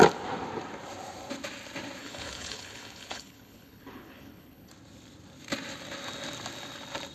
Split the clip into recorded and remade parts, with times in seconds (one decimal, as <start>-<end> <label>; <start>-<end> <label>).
0.0-2.0 recorded; 2.0-4.7 remade; 4.7-7.1 recorded